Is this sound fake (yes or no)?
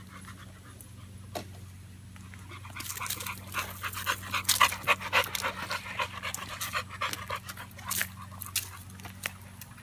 no